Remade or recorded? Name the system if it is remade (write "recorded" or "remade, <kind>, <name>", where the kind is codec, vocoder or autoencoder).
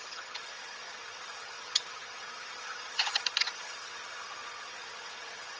remade, vocoder, HiFi-GAN